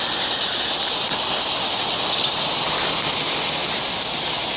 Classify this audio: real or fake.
real